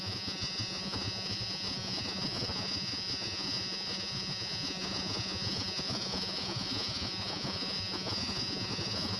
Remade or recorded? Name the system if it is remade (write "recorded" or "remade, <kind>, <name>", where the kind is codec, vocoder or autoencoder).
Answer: remade, vocoder, Vocos